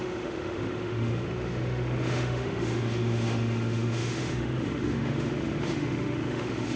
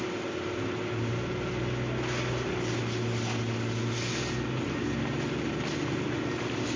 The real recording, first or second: second